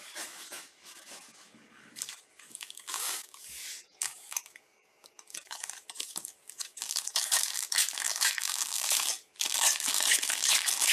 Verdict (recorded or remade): remade